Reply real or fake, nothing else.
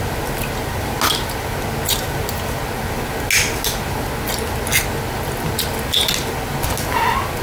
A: real